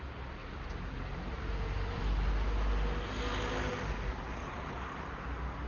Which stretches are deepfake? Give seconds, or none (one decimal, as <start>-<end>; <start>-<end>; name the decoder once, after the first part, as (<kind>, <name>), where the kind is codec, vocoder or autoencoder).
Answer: 0.4-2.0 (vocoder, BigVGAN v2)